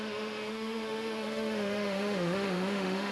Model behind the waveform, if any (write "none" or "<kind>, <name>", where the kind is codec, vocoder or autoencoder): autoencoder, DAC-VAE